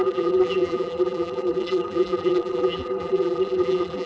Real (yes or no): no